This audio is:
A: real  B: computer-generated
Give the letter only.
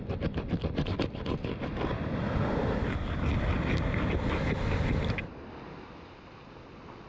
A